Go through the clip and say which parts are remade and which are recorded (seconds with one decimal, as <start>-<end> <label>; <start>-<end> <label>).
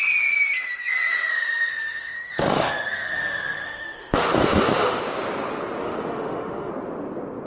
0.0-1.3 recorded; 1.3-5.0 remade; 5.0-5.8 recorded; 5.8-6.7 remade; 6.7-7.5 recorded